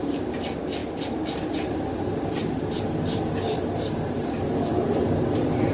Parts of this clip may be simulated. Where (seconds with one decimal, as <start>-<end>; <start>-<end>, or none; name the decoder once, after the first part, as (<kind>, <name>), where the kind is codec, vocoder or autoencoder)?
none